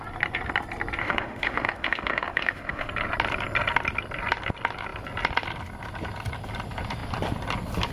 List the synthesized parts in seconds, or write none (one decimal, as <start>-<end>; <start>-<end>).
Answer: 1.0-2.9